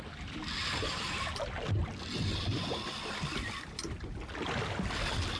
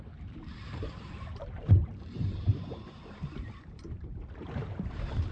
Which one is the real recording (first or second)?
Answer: first